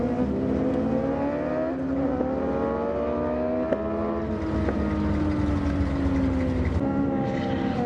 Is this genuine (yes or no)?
yes